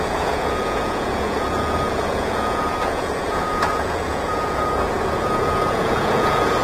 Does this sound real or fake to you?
fake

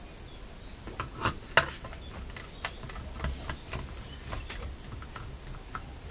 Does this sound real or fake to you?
real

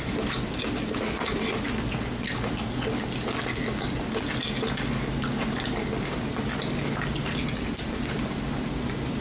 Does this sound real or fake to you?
real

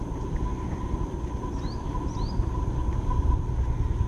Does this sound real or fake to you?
real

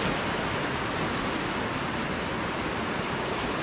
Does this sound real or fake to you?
real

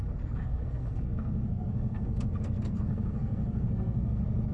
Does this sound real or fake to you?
fake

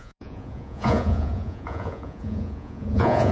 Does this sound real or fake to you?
fake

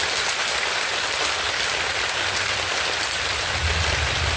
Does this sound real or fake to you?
real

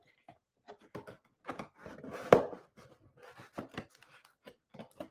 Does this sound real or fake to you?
real